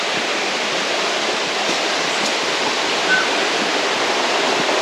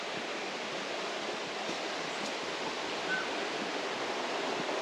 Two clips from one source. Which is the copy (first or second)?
first